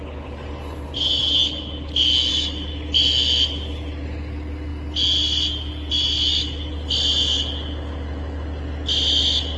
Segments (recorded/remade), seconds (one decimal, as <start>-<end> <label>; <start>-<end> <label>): 0.0-9.6 recorded